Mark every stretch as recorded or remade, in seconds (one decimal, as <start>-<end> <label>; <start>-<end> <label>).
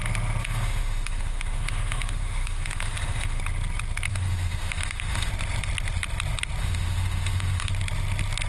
0.0-0.4 recorded; 0.4-3.4 remade; 3.4-4.1 recorded; 4.1-5.3 remade; 5.3-6.6 recorded; 6.6-7.7 remade; 7.7-8.5 recorded